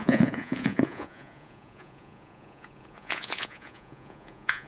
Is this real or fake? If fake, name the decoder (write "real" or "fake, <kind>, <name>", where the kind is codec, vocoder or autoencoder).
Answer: fake, vocoder, Vocos